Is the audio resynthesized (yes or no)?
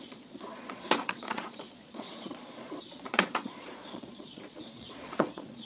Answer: yes